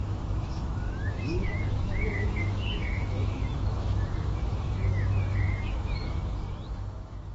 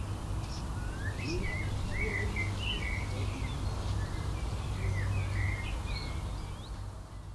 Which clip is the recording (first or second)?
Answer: second